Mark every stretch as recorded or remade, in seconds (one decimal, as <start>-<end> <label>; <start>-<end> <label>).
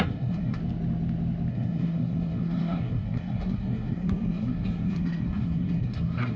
0.0-0.6 remade; 0.6-1.5 recorded; 1.5-6.4 remade